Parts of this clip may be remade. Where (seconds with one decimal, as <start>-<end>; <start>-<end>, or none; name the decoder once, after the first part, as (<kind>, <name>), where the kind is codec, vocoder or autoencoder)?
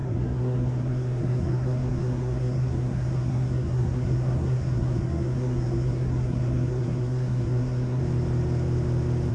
0.0-8.0 (codec, SNAC)